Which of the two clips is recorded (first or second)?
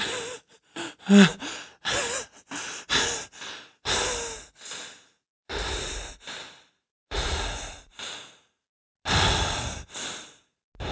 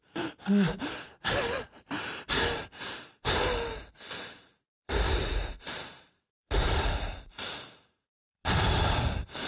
first